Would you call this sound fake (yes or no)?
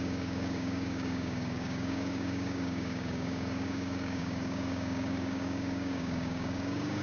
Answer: yes